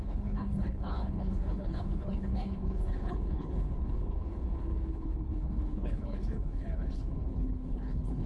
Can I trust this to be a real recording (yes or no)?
no